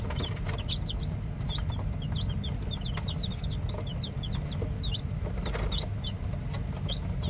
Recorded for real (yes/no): yes